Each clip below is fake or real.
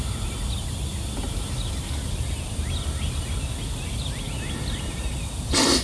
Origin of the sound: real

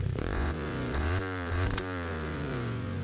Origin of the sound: fake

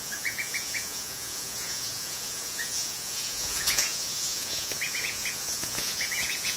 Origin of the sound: fake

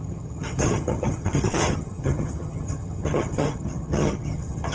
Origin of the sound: fake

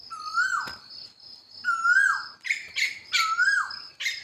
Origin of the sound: real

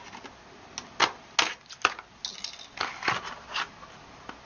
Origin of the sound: real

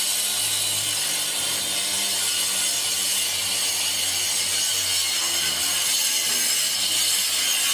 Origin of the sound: real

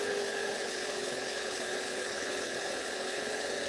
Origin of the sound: fake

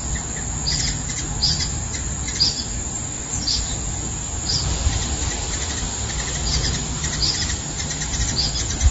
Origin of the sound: real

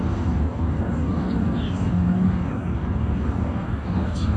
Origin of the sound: fake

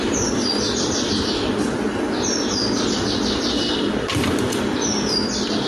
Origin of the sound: real